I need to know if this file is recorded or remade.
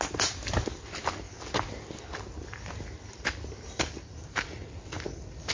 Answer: recorded